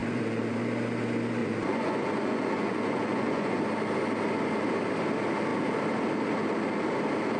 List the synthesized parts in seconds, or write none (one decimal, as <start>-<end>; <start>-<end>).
0.0-0.6; 1.4-3.6